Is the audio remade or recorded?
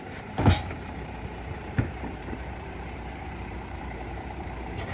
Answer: remade